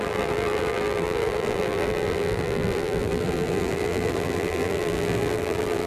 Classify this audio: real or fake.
fake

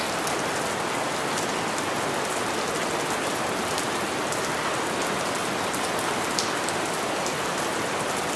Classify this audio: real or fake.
real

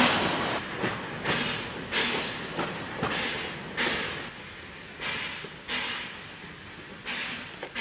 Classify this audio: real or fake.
real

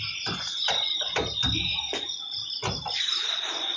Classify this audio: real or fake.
fake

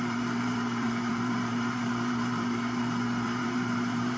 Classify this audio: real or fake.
fake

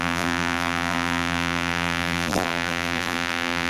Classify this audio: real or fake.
fake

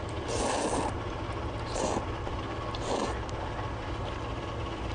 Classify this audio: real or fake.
real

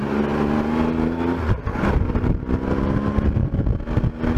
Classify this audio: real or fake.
real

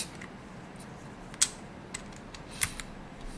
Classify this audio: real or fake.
real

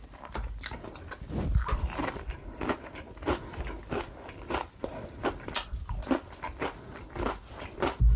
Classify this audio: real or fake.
real